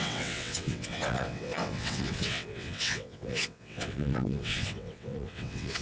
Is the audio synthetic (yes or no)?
yes